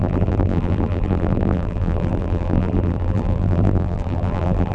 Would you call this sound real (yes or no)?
no